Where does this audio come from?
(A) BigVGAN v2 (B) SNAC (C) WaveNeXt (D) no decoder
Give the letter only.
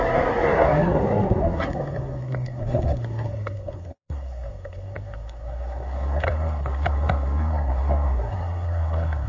B